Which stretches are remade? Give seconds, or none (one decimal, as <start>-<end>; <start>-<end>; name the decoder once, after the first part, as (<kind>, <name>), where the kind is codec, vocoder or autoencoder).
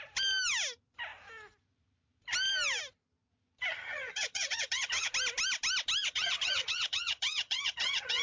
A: 3.7-5.1 (vocoder, HiFi-GAN); 6.0-8.2